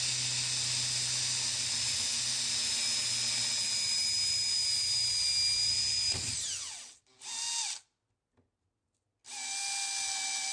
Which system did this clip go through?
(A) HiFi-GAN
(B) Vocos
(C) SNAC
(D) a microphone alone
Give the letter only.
D